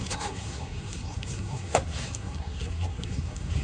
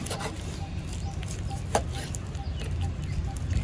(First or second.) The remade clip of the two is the first